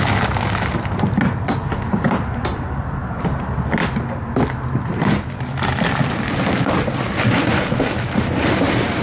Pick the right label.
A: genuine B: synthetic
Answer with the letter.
A